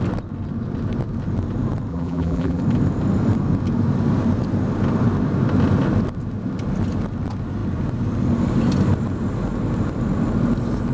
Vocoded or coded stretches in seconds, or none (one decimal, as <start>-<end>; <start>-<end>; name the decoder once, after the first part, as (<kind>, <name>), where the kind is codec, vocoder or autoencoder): 1.9-2.6 (vocoder, BigVGAN v2)